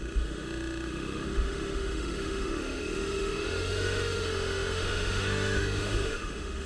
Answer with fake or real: fake